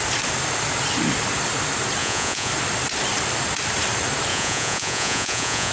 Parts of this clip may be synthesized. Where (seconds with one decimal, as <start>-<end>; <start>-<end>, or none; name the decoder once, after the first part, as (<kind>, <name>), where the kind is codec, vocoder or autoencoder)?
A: 2.0-2.5 (vocoder, Vocos); 4.3-5.7

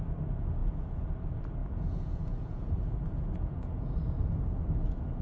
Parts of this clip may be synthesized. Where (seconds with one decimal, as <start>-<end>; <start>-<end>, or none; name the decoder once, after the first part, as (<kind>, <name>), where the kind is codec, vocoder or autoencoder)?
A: 0.6-1.1 (vocoder, Vocos); 1.6-3.8